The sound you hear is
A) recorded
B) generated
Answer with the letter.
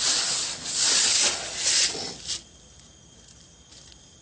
A